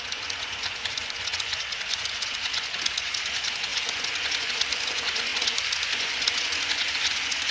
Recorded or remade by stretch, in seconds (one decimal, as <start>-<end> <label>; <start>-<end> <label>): 0.0-7.5 remade